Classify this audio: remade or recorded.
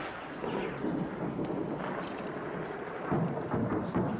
recorded